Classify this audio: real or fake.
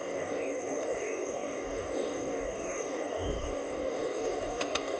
fake